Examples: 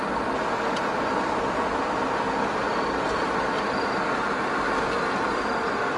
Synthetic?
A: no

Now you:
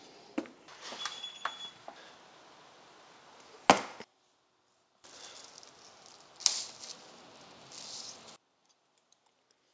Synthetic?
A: no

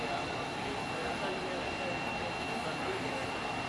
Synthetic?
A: no